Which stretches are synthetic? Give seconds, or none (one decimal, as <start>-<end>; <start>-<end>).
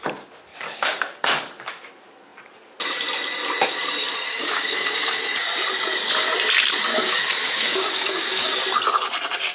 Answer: 0.5-1.9; 4.3-5.2; 6.9-8.6